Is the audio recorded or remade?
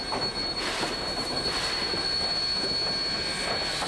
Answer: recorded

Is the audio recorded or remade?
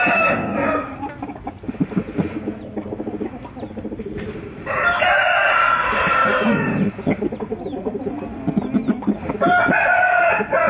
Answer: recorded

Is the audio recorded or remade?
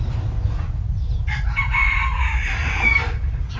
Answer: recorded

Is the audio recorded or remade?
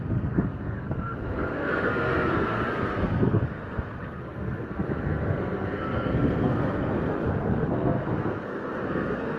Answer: remade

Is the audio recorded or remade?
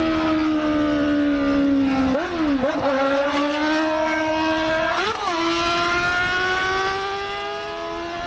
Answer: recorded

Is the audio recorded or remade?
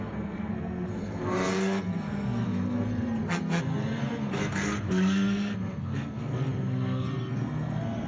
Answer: remade